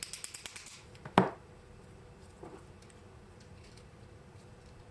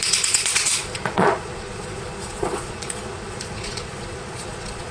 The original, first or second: first